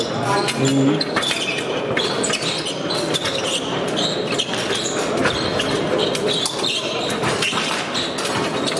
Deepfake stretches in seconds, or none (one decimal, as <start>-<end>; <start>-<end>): none